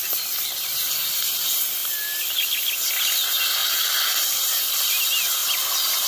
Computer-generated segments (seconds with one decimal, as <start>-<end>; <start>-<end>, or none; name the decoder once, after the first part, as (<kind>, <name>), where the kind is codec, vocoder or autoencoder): none